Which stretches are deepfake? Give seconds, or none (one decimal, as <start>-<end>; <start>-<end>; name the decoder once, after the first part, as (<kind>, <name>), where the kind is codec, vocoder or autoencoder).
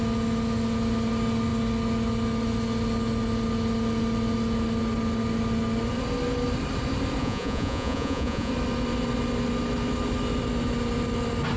7.2-8.5 (vocoder, Vocos)